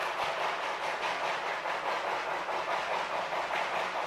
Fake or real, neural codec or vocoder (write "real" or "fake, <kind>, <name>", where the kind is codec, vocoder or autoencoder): real